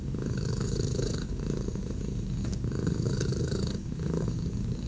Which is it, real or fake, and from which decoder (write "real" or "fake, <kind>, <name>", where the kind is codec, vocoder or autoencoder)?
fake, codec, DAC